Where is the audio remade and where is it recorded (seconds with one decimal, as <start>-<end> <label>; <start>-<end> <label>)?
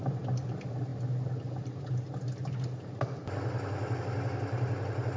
0.0-5.2 recorded